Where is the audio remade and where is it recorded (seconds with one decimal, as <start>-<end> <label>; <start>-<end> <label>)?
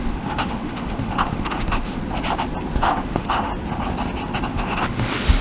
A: 0.0-2.0 remade; 2.0-2.8 recorded; 2.8-3.5 remade; 3.5-4.5 recorded; 4.5-5.4 remade